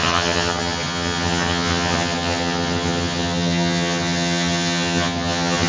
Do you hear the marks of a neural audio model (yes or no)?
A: yes